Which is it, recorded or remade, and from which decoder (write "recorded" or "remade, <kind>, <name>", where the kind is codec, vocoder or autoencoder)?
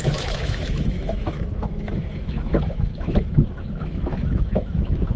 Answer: remade, autoencoder, DAC-VAE